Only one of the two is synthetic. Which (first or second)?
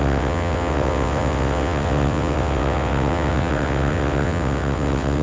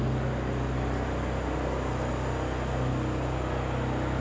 first